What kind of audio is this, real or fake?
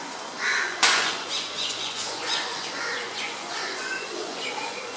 fake